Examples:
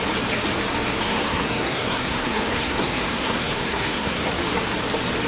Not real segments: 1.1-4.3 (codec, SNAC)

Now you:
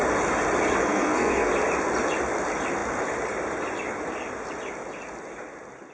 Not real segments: 0.8-1.5 (codec, SNAC)

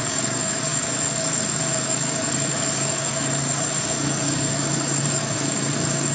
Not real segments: 0.0-6.1 (codec, DAC)

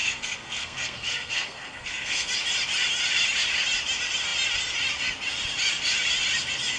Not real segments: 0.0-2.3 (codec, SNAC)

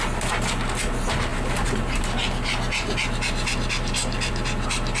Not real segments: none